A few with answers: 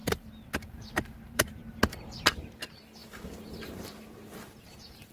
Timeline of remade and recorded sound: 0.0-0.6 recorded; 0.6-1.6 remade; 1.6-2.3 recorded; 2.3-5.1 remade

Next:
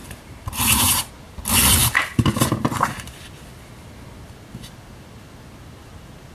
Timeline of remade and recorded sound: 0.0-1.1 remade; 1.1-1.8 recorded; 1.8-2.6 remade; 2.6-6.3 recorded

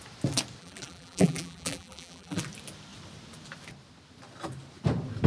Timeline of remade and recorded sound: 0.0-0.6 recorded; 0.6-2.4 remade; 2.4-5.3 recorded

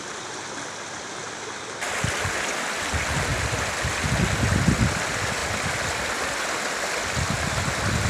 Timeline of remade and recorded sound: 0.0-8.1 recorded

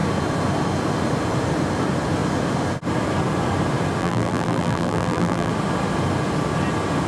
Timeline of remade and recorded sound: 0.0-4.0 recorded; 4.0-5.5 remade; 5.5-7.1 recorded

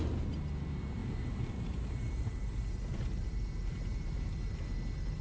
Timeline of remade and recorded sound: 0.0-1.0 recorded; 1.0-4.1 remade; 4.1-5.2 recorded